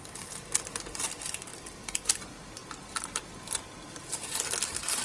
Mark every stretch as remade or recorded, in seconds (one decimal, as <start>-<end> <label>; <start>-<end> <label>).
0.0-1.5 recorded; 1.5-2.2 remade; 2.2-5.0 recorded

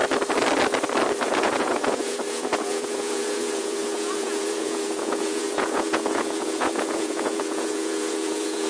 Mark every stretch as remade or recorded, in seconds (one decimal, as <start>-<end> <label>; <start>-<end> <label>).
0.0-1.2 recorded; 1.2-8.7 remade

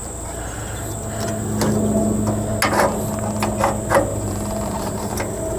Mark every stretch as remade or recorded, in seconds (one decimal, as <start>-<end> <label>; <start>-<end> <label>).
0.0-4.1 recorded; 4.1-5.1 remade; 5.1-5.6 recorded

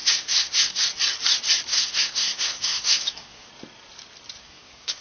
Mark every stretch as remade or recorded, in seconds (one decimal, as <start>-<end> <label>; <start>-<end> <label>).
0.0-0.8 remade; 0.8-1.7 recorded; 1.7-3.5 remade; 3.5-4.4 recorded; 4.4-5.0 remade

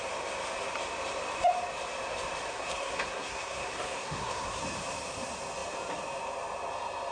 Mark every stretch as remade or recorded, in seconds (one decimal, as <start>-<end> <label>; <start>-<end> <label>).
0.0-2.5 recorded; 2.5-4.6 remade; 4.6-7.1 recorded

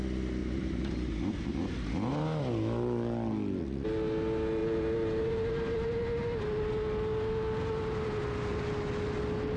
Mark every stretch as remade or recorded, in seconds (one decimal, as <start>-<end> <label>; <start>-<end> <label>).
0.0-0.4 recorded; 0.4-1.5 remade; 1.5-9.6 recorded

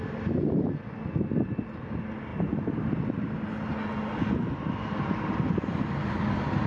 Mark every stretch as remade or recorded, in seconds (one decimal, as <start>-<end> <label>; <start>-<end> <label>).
0.0-6.7 recorded